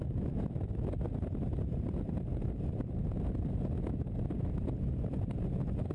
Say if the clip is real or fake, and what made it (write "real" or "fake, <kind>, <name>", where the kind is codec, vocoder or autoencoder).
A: real